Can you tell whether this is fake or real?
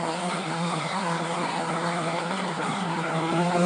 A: fake